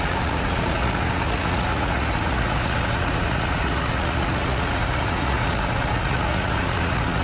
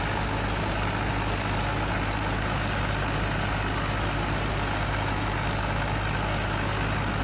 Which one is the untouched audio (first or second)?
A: second